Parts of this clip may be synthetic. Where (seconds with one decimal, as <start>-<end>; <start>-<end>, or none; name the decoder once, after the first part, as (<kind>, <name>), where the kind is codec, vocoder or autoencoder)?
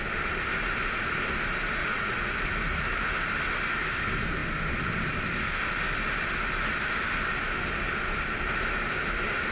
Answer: 1.8-2.3 (vocoder, Vocos)